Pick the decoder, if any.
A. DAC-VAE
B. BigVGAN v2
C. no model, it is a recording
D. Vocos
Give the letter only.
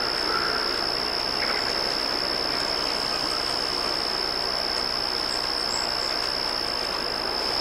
C